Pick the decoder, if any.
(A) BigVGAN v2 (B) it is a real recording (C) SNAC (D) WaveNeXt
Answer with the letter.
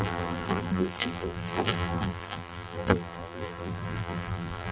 A